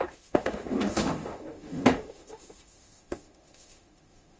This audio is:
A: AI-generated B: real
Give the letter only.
A